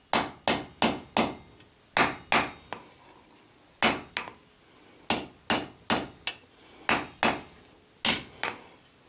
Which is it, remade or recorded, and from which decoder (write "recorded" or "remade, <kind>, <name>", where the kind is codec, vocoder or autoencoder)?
recorded